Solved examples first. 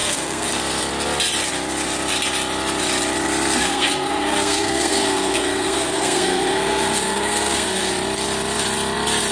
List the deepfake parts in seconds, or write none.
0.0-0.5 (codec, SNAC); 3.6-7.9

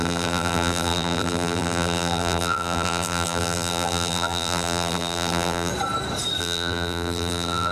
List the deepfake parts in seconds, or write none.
0.0-5.7 (vocoder, BigVGAN v2); 6.4-7.7

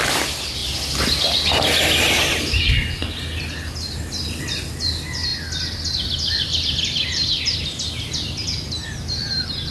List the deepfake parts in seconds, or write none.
none

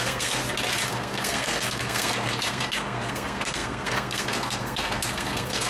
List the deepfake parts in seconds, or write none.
0.0-0.4 (codec, SNAC); 0.9-5.7

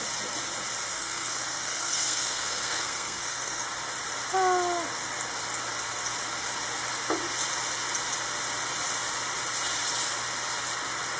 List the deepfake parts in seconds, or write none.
0.9-3.6 (codec, SNAC)

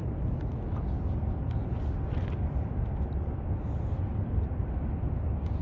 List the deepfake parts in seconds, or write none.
none